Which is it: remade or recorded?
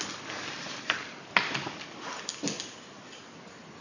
recorded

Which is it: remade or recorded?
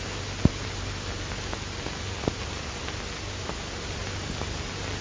recorded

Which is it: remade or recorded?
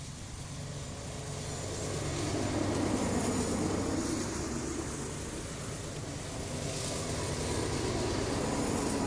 recorded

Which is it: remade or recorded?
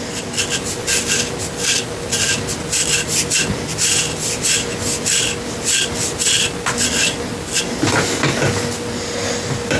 recorded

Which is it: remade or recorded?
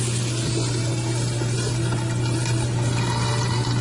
recorded